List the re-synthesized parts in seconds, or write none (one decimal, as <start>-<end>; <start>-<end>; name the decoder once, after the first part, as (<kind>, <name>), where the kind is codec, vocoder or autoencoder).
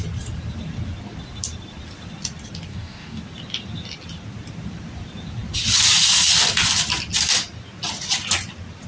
2.7-3.2 (codec, DAC)